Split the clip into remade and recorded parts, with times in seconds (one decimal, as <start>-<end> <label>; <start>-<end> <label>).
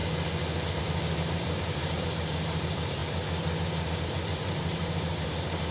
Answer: 0.0-0.8 recorded; 0.8-3.0 remade; 3.0-3.6 recorded; 3.6-5.7 remade